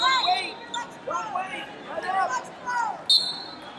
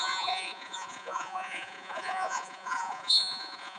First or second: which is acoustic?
first